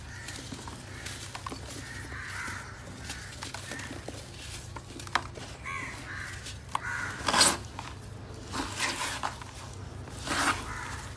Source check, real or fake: real